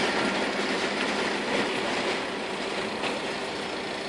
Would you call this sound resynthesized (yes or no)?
no